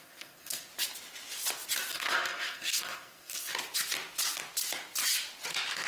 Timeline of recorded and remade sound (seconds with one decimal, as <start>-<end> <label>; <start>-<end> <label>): 0.0-0.7 remade; 0.7-1.9 recorded; 1.9-3.5 remade; 3.5-5.9 recorded